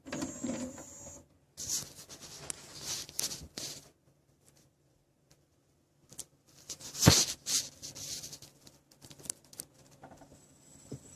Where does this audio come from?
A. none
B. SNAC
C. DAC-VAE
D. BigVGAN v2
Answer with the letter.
A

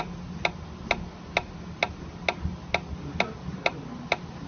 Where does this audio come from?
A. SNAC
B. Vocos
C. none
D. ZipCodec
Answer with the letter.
C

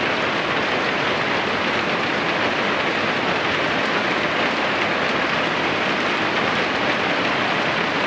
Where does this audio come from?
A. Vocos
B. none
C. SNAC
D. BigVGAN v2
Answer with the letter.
B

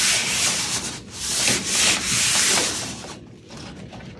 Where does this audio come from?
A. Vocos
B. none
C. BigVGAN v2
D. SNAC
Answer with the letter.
B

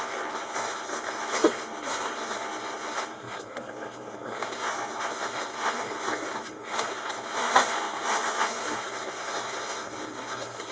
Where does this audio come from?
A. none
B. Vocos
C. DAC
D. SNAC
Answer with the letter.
D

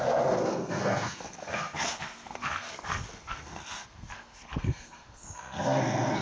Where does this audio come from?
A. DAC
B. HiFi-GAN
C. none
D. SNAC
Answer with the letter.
D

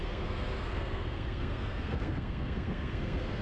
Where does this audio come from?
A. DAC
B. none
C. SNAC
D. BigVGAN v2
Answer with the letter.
C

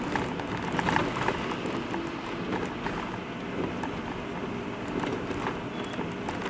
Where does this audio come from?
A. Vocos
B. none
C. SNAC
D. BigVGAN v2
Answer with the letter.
B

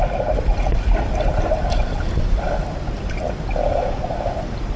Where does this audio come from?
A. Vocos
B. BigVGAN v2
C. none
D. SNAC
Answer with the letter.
C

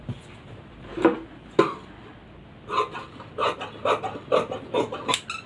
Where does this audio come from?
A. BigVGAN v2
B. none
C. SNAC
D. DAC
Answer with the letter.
B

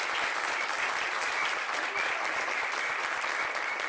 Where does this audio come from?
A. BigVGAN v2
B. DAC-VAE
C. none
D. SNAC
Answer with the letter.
C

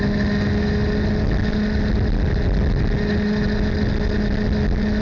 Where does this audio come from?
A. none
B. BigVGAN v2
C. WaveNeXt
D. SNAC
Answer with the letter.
A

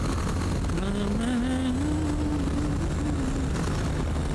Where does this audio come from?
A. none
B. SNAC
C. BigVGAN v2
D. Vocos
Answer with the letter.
A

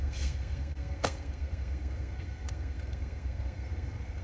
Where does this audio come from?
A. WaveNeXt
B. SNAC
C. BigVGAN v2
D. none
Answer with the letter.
B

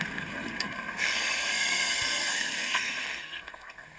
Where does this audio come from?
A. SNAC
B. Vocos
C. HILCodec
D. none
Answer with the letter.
A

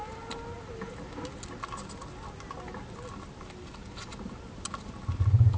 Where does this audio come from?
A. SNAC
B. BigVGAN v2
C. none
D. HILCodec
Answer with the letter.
C